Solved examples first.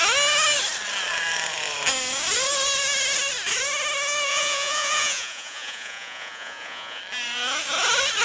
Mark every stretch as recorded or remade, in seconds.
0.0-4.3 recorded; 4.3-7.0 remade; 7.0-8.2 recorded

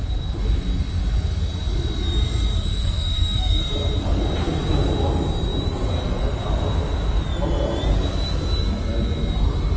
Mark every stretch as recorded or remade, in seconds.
0.0-2.7 recorded; 2.7-3.6 remade; 3.6-9.8 recorded

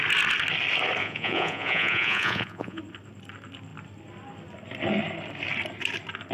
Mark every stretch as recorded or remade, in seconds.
0.0-1.0 recorded; 1.0-2.8 remade; 2.8-6.3 recorded

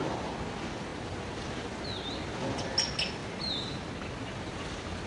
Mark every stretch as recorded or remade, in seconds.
0.0-3.2 recorded; 3.2-3.9 remade; 3.9-5.1 recorded

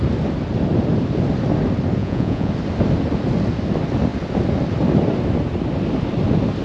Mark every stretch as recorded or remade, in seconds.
0.0-2.0 recorded; 2.0-2.5 remade; 2.5-6.6 recorded

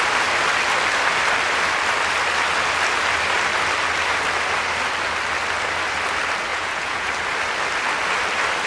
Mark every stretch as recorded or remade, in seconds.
0.0-6.5 recorded; 6.5-7.1 remade; 7.1-8.7 recorded

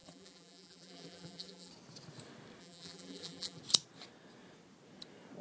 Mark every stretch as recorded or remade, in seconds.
0.0-1.7 remade; 1.7-2.6 recorded; 2.6-3.6 remade; 3.6-5.4 recorded